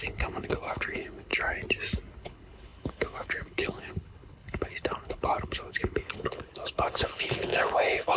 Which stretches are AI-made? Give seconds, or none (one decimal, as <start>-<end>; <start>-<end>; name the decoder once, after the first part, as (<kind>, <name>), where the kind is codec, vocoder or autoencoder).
0.0-1.3 (codec, HILCodec); 2.1-8.2